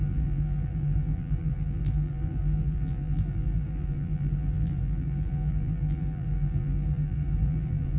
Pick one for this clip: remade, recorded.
remade